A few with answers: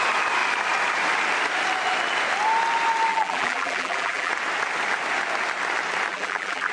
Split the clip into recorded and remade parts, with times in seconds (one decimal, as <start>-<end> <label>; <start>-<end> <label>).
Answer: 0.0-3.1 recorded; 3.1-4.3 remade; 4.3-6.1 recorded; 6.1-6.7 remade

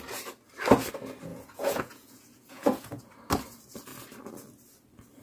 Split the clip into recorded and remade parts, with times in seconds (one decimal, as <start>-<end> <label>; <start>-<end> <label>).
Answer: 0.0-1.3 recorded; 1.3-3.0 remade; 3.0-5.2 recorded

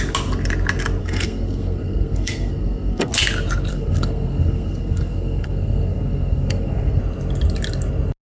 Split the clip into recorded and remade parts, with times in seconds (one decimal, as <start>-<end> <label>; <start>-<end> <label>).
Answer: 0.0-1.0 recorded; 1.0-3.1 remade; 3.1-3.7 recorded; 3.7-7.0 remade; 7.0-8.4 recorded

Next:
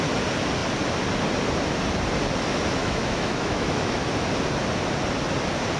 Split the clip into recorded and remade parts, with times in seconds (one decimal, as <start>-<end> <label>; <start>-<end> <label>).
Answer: 0.0-2.8 recorded; 2.8-4.1 remade; 4.1-5.8 recorded